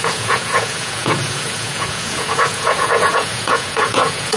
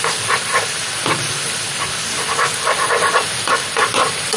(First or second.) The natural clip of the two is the second